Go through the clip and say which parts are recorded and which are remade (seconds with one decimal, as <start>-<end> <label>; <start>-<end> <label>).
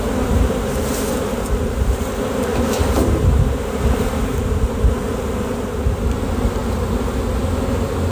0.0-6.6 remade; 6.6-8.1 recorded